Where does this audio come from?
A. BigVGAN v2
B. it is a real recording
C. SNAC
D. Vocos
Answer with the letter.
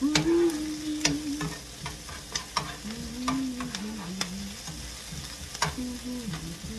B